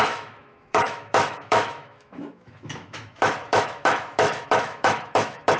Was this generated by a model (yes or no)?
yes